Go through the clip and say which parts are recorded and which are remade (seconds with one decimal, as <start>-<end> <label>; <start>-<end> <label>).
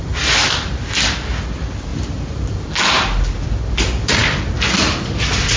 0.0-5.6 recorded